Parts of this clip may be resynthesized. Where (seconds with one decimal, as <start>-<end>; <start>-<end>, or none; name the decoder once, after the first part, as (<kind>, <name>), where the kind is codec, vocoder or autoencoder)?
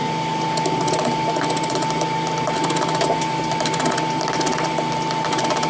none